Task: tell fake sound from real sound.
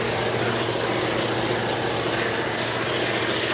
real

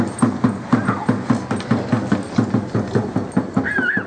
real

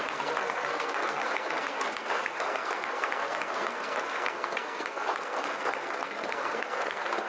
fake